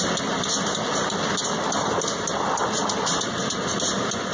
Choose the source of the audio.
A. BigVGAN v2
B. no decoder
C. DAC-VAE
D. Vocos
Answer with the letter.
B